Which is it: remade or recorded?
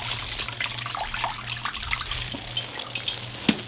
recorded